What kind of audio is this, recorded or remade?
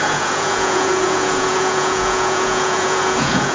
remade